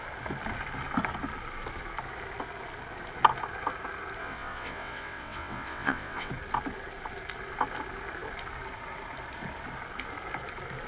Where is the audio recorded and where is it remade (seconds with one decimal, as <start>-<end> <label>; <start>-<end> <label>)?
0.0-4.2 recorded; 4.2-6.3 remade; 6.3-10.9 recorded